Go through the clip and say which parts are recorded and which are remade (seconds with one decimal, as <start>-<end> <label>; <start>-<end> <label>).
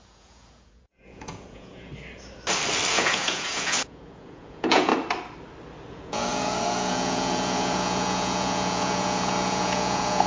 0.0-1.9 remade; 1.9-2.9 recorded; 2.9-4.9 remade; 4.9-5.9 recorded; 5.9-10.3 remade